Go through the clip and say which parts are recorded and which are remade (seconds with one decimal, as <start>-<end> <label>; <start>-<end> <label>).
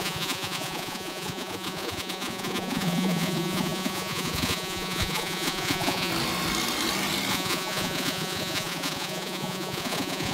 0.0-6.1 remade; 6.1-7.3 recorded; 7.3-10.3 remade